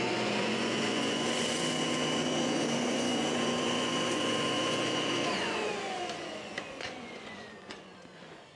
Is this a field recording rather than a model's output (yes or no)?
no